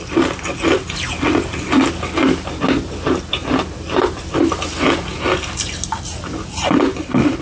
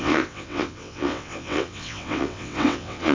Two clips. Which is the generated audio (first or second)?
second